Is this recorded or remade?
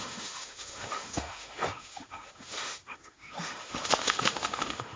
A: remade